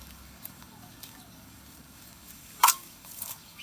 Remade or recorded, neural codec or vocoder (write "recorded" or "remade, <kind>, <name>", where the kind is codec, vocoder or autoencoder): remade, codec, DAC